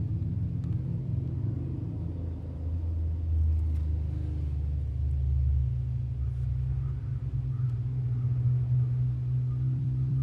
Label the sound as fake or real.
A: fake